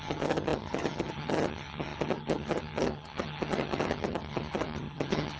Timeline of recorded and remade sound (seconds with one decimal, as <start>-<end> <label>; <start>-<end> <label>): 0.0-5.4 remade